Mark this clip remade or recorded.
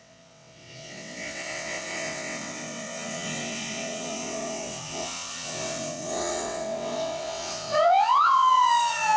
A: remade